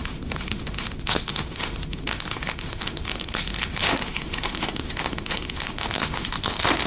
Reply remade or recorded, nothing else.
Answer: remade